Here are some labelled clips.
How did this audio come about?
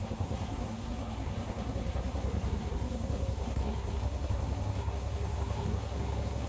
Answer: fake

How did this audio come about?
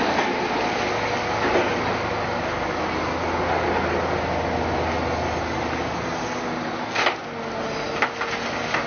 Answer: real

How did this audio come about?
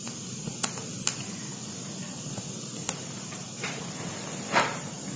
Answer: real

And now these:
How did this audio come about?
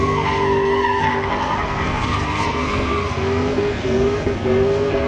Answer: fake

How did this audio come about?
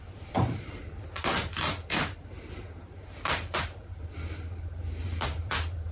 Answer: fake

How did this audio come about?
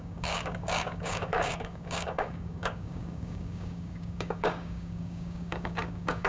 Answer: fake